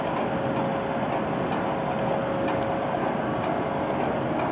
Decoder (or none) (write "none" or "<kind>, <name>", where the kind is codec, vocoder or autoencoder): none